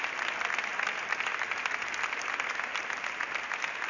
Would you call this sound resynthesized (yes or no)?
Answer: no